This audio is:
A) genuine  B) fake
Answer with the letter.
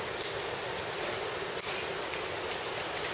A